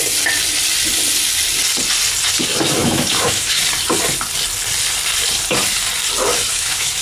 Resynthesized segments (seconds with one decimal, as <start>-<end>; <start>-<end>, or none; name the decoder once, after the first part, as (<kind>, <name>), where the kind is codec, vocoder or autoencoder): 2.8-3.6 (autoencoder, DAC-VAE); 6.5-7.0